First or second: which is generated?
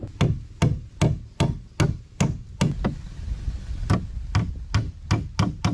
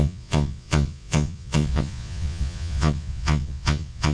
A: second